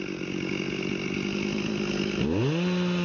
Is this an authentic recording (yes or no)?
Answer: yes